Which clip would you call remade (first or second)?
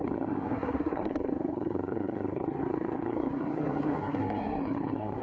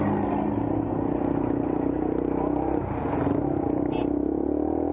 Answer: first